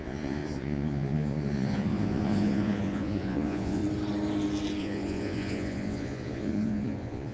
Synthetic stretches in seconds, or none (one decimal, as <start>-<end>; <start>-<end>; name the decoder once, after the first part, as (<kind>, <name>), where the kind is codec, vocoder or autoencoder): 0.0-3.8 (vocoder, Vocos); 4.8-7.3